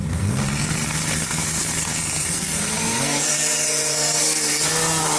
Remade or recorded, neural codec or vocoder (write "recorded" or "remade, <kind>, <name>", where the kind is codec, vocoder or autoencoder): remade, codec, SNAC